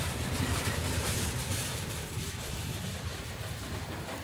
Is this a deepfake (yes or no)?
yes